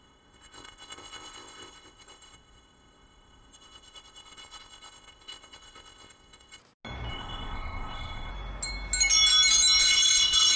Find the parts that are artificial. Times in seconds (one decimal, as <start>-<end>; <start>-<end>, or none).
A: 0.0-6.6; 7.1-8.3; 9.8-10.6